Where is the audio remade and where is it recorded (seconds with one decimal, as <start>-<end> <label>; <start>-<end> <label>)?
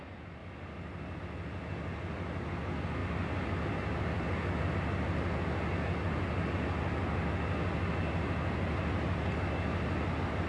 0.0-3.0 recorded; 3.0-4.7 remade; 4.7-10.5 recorded